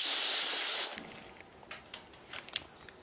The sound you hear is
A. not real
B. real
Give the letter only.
B